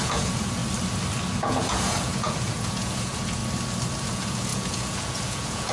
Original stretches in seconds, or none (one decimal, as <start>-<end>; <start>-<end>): 0.6-1.3; 3.4-4.0